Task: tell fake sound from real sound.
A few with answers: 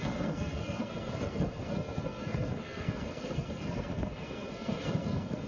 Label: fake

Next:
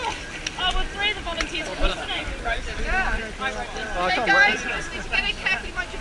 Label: real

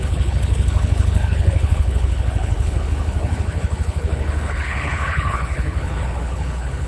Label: fake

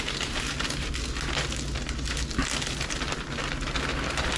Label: real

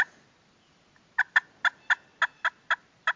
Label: real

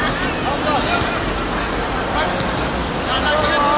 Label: real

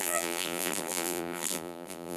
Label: fake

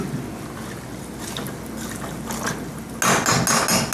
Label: real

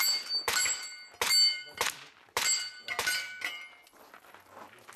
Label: real